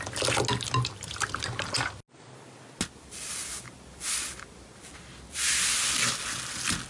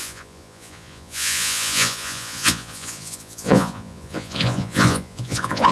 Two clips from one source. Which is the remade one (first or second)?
second